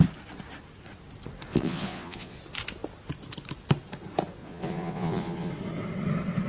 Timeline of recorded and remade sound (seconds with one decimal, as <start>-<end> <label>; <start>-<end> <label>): 0.0-1.5 recorded; 1.5-2.4 remade; 2.4-4.4 recorded; 4.4-5.5 remade; 5.5-6.5 recorded